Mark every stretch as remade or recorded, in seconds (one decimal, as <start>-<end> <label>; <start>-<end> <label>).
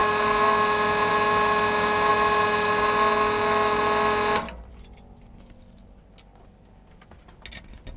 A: 0.0-8.0 recorded